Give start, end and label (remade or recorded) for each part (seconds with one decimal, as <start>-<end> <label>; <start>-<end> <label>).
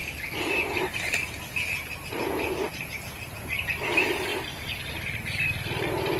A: 0.0-3.7 recorded; 3.7-4.3 remade; 4.3-6.2 recorded